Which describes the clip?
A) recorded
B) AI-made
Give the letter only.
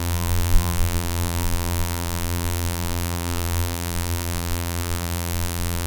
B